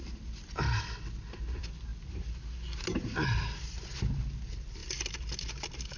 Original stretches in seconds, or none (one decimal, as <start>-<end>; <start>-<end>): 0.0-6.0